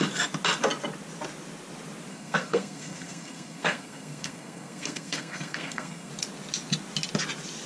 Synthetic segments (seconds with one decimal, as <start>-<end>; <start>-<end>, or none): 2.1-6.1